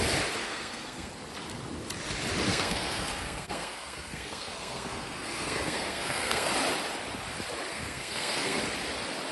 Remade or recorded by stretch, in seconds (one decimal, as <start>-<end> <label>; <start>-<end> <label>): 0.0-0.4 recorded; 0.4-1.1 remade; 1.1-2.5 recorded; 2.5-6.5 remade; 6.5-7.7 recorded; 7.7-8.6 remade; 8.6-9.3 recorded